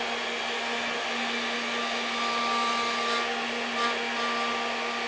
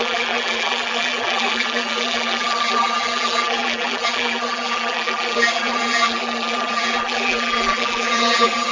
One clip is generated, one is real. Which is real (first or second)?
first